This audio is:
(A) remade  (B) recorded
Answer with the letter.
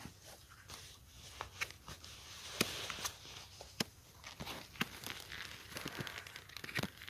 B